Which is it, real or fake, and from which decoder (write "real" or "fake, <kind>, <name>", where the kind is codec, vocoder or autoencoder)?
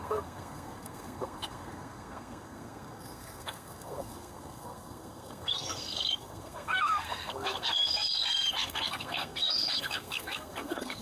fake, codec, SNAC